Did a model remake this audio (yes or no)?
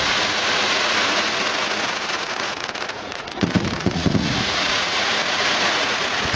yes